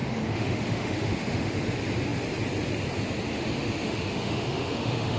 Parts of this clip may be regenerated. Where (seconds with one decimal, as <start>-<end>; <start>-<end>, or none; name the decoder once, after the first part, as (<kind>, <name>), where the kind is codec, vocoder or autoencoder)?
0.0-1.6 (autoencoder, DAC-VAE); 3.3-5.2